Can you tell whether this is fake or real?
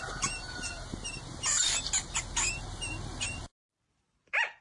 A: real